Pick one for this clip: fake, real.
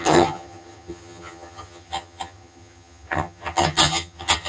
fake